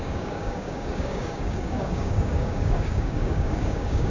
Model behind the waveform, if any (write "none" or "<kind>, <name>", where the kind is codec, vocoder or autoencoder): codec, DAC